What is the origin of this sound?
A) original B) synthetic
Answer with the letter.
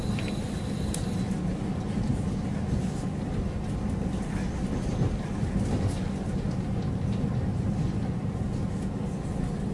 A